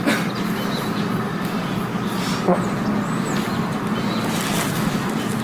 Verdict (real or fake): real